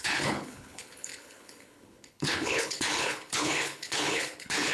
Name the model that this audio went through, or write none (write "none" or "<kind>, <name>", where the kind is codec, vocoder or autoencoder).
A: codec, HILCodec